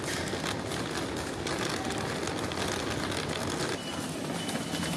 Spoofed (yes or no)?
no